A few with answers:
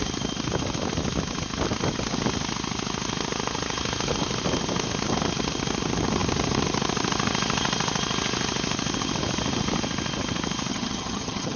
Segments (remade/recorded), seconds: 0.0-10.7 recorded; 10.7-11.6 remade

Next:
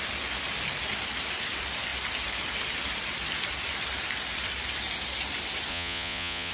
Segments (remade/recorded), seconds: 0.0-5.7 recorded; 5.7-6.5 remade

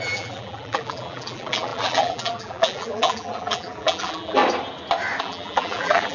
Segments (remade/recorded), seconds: 0.0-4.4 remade; 4.4-5.2 recorded; 5.2-6.1 remade

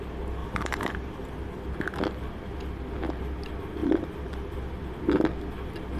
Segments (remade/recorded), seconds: 0.0-0.4 recorded; 0.4-1.6 remade; 1.6-3.8 recorded; 3.8-4.7 remade; 4.7-6.0 recorded

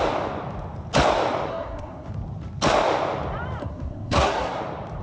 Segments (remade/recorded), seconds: 0.0-1.5 recorded; 1.5-2.1 remade; 2.1-3.6 recorded; 3.6-4.6 remade; 4.6-5.0 recorded

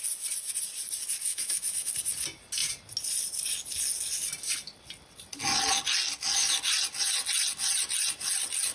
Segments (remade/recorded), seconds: 0.0-1.3 recorded; 1.3-1.9 remade; 1.9-8.7 recorded